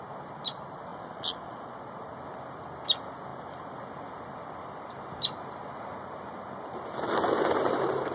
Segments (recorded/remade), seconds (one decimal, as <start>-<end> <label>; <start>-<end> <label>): 0.0-0.9 recorded; 0.9-1.8 remade; 1.8-8.1 recorded